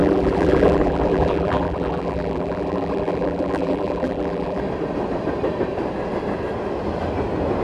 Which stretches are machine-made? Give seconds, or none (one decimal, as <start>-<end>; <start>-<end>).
0.0-4.6